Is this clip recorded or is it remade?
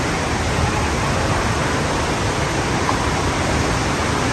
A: recorded